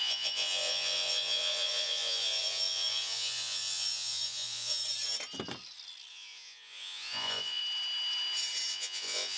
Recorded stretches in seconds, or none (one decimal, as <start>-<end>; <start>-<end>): 4.8-6.1; 7.6-8.7

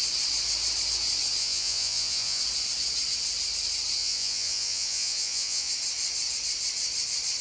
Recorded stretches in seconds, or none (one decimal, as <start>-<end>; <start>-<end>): 0.0-1.4; 2.4-4.0; 5.7-7.4

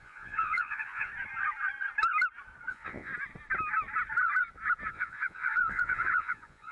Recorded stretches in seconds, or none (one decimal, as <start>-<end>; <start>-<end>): 1.1-2.7; 3.1-4.9

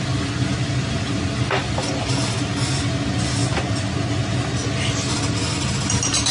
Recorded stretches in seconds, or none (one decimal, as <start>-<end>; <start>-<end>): 0.0-6.3

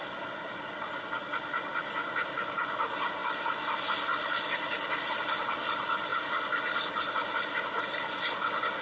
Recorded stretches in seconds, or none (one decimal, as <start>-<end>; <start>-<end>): 0.0-8.8

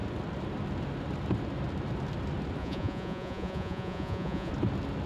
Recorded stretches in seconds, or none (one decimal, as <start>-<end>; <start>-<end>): 0.0-2.6; 4.5-5.1